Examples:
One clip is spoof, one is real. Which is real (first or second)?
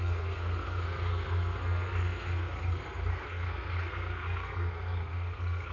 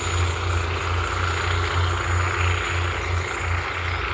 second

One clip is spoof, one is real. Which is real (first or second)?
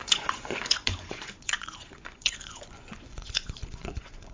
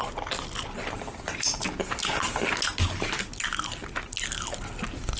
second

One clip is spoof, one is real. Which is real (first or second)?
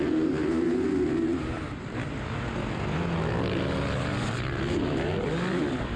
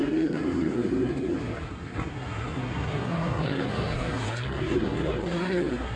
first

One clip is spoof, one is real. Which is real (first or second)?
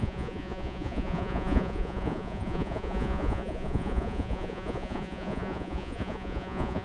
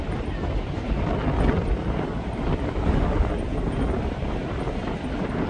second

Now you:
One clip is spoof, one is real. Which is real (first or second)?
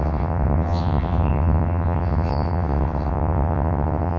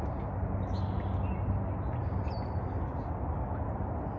second